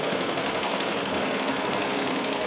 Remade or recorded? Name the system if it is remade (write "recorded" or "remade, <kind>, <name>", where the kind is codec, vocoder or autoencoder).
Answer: remade, codec, SNAC